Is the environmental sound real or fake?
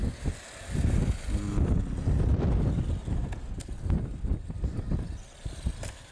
real